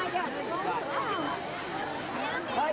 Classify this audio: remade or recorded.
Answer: recorded